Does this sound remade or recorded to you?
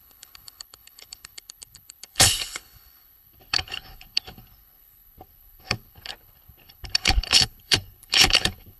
remade